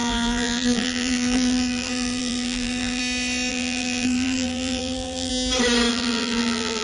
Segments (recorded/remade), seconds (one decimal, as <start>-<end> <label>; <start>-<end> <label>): 0.0-3.0 remade; 3.0-3.5 recorded; 3.5-5.3 remade; 5.3-5.9 recorded; 5.9-6.8 remade